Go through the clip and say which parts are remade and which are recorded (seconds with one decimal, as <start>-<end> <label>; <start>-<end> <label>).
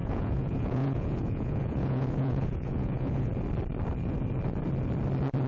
0.0-3.3 remade; 3.3-5.5 recorded